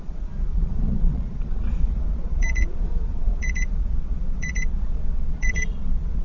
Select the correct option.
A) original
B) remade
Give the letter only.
B